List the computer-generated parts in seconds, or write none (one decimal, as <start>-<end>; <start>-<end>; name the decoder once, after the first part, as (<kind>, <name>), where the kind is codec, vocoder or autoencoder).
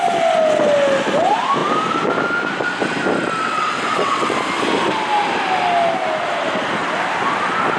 3.4-4.3 (vocoder, WaveNeXt)